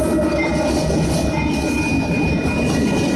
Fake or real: real